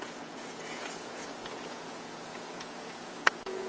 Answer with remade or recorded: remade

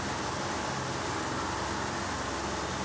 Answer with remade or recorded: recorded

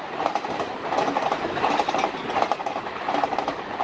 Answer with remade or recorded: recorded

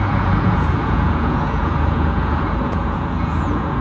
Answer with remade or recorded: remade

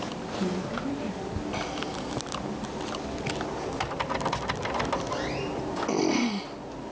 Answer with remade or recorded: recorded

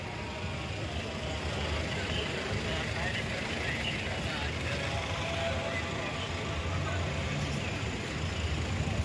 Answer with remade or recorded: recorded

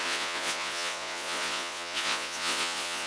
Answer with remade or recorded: remade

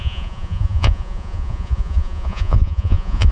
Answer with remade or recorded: remade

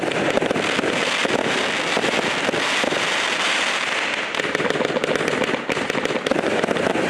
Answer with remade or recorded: recorded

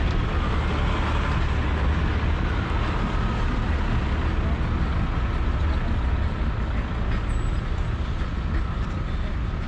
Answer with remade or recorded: recorded